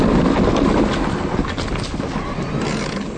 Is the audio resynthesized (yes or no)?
no